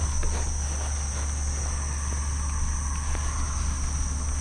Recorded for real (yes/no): yes